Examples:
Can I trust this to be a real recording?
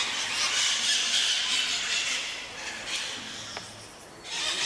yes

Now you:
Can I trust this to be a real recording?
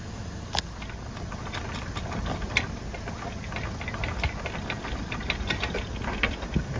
yes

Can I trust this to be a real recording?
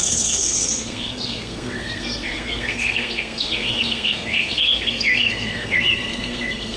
no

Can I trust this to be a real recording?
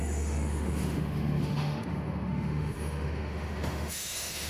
no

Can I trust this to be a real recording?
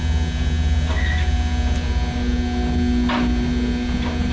yes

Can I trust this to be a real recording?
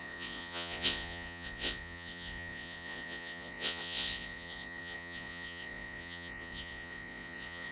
no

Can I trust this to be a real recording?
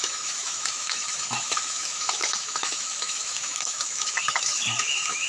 no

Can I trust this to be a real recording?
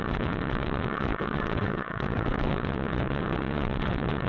no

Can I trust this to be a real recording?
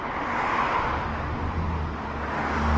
yes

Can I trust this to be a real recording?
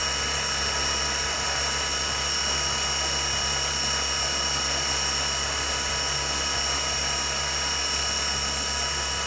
yes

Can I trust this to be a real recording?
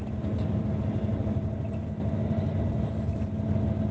yes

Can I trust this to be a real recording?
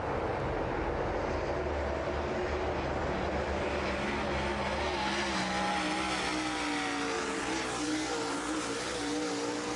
yes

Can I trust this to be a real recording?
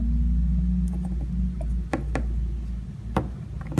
yes